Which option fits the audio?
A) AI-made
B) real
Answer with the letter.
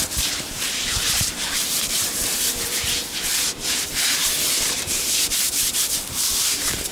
A